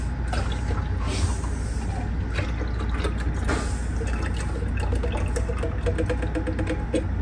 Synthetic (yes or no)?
no